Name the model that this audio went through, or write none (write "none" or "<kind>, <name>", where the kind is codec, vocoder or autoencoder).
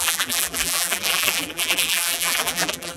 vocoder, BigVGAN v2